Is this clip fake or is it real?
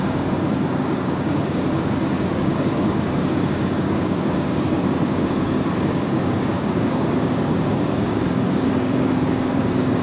fake